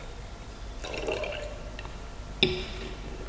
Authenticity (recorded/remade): recorded